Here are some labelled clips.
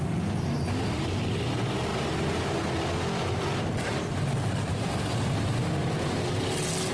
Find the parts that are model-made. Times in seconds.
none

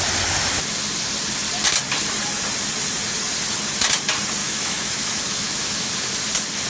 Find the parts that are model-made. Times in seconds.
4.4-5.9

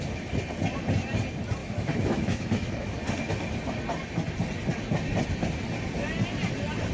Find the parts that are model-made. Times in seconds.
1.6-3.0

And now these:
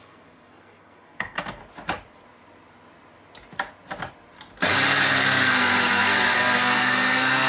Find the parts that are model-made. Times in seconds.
0.0-1.6; 5.1-7.5

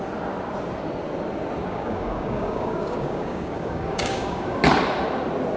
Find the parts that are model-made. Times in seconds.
1.6-4.6

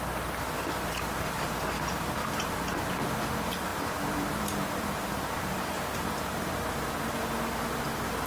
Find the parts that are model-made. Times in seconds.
3.7-7.0

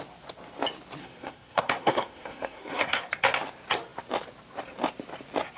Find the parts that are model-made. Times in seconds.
1.0-3.0